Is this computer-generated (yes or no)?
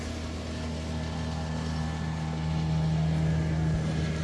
no